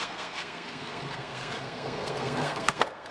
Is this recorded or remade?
remade